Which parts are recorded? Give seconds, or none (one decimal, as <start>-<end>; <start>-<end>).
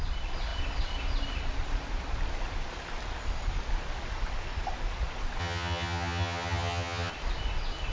0.0-5.4; 7.1-7.9